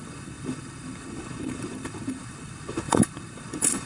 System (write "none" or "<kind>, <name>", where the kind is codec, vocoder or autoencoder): codec, HILCodec